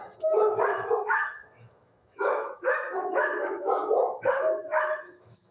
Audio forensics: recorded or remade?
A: remade